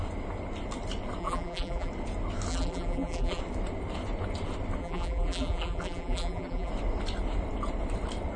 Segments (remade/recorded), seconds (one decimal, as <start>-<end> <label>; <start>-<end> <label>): 0.0-1.2 recorded; 1.2-1.9 remade; 1.9-2.5 recorded; 2.5-3.4 remade; 3.4-4.8 recorded; 4.8-6.7 remade; 6.7-8.4 recorded